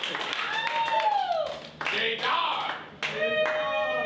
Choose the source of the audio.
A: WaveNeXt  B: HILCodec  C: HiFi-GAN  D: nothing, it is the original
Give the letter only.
D